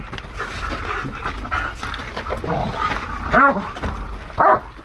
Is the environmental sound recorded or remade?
recorded